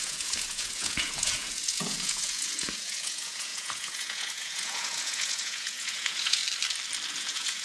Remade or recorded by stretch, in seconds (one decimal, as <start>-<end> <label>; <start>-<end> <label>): 0.0-6.4 remade; 6.4-7.1 recorded; 7.1-7.6 remade